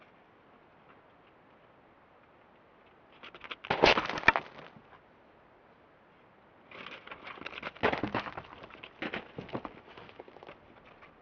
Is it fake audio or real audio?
real